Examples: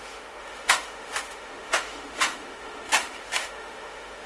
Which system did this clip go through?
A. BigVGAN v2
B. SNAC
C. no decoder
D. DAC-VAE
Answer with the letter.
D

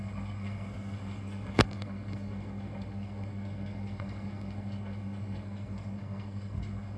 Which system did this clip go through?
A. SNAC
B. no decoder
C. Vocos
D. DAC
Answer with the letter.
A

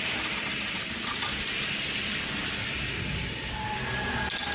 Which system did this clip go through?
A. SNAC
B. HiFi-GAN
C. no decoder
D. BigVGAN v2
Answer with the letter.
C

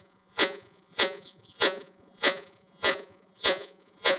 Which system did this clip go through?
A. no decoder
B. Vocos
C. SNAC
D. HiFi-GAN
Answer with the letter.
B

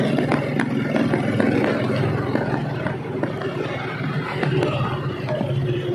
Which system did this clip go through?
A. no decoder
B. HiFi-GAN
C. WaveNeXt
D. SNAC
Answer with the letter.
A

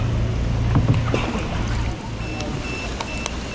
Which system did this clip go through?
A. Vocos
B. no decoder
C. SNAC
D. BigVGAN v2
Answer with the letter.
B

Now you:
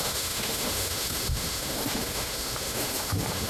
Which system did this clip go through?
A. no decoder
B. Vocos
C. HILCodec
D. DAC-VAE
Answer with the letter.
D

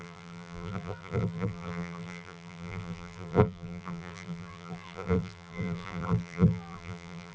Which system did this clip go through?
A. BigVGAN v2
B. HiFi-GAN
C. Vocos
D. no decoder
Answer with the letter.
A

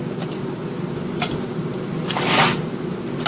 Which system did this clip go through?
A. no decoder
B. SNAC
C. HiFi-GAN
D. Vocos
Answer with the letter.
A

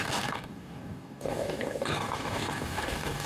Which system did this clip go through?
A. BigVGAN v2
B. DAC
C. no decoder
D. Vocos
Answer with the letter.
B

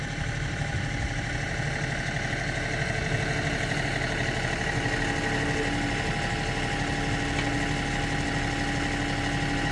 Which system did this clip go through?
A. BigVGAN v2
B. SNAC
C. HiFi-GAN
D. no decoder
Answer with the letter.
D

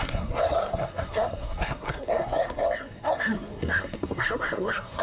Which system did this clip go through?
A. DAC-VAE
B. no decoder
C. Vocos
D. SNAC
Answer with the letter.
D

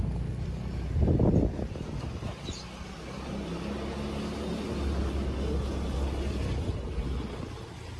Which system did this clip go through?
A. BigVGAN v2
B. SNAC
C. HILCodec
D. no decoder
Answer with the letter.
D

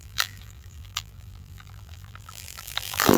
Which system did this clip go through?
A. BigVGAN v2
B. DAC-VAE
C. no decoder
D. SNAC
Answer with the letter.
A